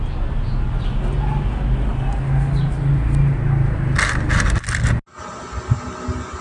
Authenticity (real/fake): real